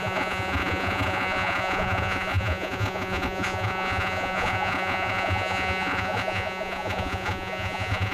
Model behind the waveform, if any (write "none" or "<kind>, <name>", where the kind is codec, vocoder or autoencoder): vocoder, Vocos